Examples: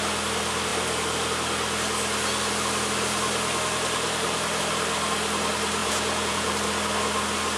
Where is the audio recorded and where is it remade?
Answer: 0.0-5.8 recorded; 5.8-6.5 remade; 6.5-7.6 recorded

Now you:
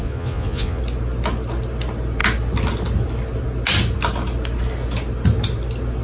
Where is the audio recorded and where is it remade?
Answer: 0.0-0.8 remade; 0.8-6.0 recorded

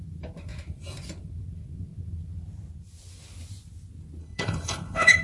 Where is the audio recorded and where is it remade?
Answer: 0.0-4.2 recorded; 4.2-5.2 remade

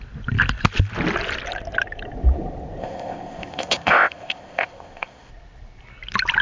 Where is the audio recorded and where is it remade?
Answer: 0.0-2.8 recorded; 2.8-5.3 remade; 5.3-6.4 recorded

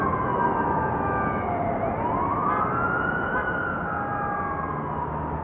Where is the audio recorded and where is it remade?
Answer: 0.0-5.4 recorded

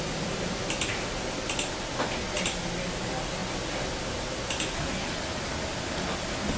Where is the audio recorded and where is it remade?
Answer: 0.0-6.6 recorded

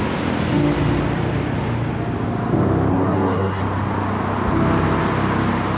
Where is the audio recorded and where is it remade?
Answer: 0.0-2.9 recorded; 2.9-3.6 remade; 3.6-5.8 recorded